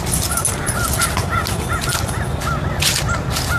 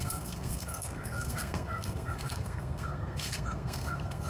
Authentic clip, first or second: first